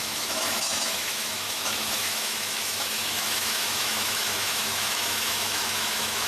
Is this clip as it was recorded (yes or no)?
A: no